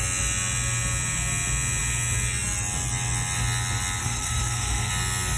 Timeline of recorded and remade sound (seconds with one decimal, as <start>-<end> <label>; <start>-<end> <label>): 0.0-4.0 recorded; 4.0-4.9 remade; 4.9-5.4 recorded